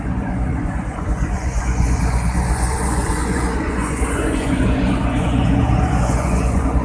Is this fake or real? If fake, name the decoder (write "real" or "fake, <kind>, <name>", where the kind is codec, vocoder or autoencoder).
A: fake, vocoder, Vocos